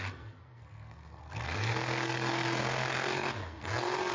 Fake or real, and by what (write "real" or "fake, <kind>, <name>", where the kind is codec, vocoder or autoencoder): fake, codec, SNAC